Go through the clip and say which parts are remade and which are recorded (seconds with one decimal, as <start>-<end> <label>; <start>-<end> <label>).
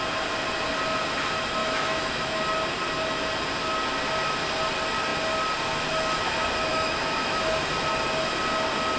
0.0-1.6 recorded; 1.6-2.4 remade; 2.4-6.7 recorded; 6.7-7.4 remade; 7.4-9.0 recorded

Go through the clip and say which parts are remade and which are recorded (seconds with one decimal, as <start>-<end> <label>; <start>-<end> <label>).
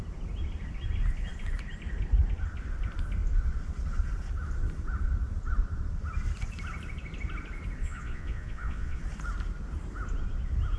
0.0-7.8 recorded; 7.8-9.0 remade; 9.0-10.8 recorded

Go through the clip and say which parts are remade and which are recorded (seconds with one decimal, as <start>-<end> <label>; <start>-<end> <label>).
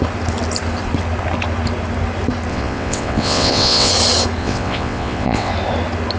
0.0-2.5 recorded; 2.5-3.9 remade; 3.9-4.4 recorded; 4.4-5.5 remade; 5.5-6.2 recorded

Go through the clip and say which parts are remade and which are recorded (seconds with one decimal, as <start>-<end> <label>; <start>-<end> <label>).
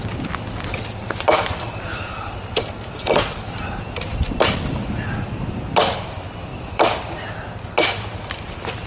0.0-6.5 recorded; 6.5-7.0 remade; 7.0-8.9 recorded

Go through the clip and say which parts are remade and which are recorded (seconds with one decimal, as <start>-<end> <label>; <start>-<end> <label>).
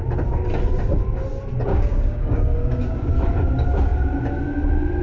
0.0-1.7 recorded; 1.7-3.1 remade; 3.1-5.0 recorded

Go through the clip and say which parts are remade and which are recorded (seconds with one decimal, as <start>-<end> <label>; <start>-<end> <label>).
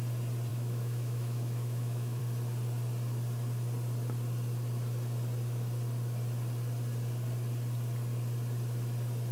0.0-0.5 recorded; 0.5-2.2 remade; 2.2-9.3 recorded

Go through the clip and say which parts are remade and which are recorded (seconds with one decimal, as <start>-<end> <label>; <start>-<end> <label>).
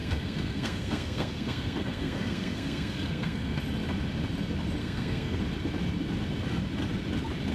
0.0-3.6 remade; 3.6-4.8 recorded; 4.8-5.4 remade; 5.4-7.5 recorded